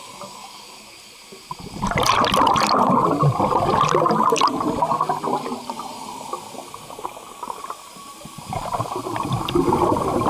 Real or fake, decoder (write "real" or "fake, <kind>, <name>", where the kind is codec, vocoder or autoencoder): real